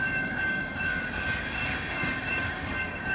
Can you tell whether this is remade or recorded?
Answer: remade